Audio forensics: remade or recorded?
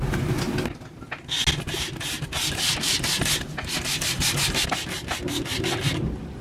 recorded